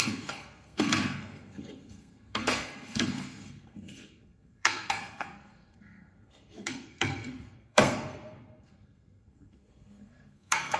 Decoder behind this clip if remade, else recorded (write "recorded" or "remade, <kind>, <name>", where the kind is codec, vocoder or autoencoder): remade, codec, SNAC